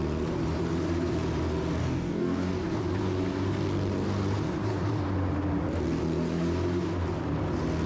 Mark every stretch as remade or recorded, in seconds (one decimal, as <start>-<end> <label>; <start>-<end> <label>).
0.0-1.8 recorded; 1.8-2.5 remade; 2.5-7.9 recorded